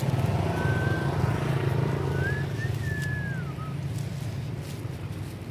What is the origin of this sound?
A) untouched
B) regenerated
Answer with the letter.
A